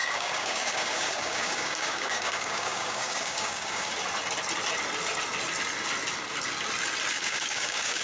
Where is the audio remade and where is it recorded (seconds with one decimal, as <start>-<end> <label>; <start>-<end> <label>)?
0.0-3.9 remade; 3.9-7.1 recorded; 7.1-8.0 remade